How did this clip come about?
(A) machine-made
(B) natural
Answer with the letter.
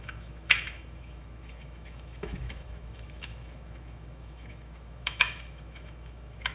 A